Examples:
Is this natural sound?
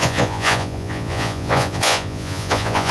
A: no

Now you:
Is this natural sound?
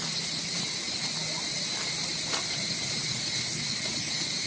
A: yes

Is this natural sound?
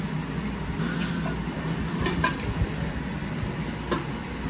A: yes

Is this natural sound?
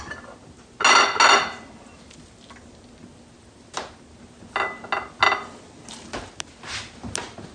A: yes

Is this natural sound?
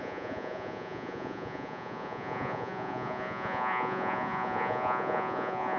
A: no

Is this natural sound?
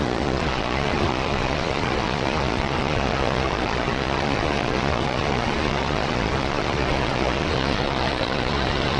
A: no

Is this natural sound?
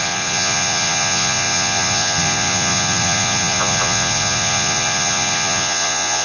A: no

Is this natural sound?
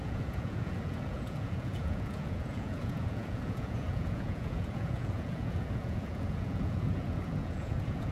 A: no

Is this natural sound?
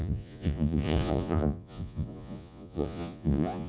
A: no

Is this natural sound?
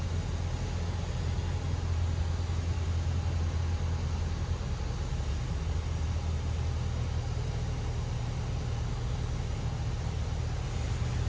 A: yes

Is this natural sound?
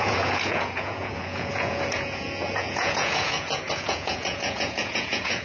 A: no